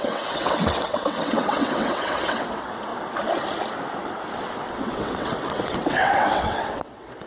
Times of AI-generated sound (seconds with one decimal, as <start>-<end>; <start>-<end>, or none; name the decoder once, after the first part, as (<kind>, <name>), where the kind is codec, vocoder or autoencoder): 0.0-2.9 (vocoder, WaveNeXt); 4.8-7.3